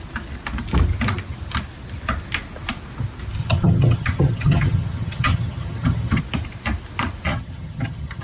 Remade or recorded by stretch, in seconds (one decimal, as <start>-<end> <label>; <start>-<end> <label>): 0.0-3.4 recorded; 3.4-6.2 remade; 6.2-7.3 recorded; 7.3-8.2 remade